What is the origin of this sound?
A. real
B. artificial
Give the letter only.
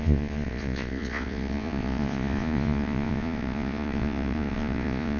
B